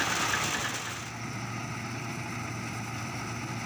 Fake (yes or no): no